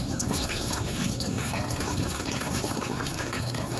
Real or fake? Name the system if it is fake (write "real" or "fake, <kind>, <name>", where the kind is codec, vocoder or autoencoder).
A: fake, codec, SNAC